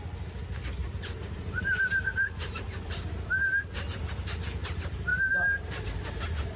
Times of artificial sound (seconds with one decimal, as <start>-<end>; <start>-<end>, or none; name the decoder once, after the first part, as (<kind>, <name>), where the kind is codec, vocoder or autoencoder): 0.8-2.9 (vocoder, BigVGAN v2); 3.9-4.4